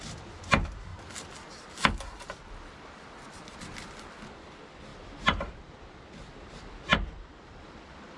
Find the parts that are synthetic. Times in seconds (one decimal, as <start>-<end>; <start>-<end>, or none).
4.9-5.8; 6.9-8.2